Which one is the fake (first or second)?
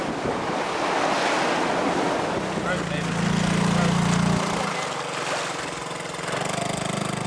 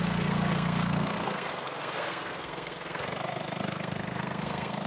second